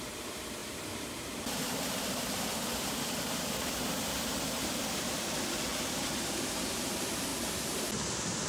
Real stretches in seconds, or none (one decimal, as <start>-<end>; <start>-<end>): 5.7-6.8; 7.3-8.5